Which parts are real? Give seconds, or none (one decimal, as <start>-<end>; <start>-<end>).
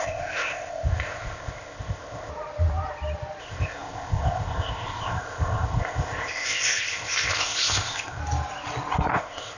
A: 2.3-3.4; 8.2-9.1